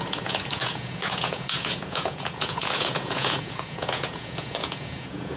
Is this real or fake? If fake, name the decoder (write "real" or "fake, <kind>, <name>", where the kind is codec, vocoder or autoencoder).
fake, vocoder, Vocos